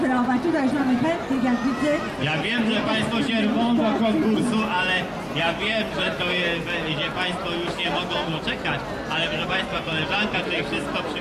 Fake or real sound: real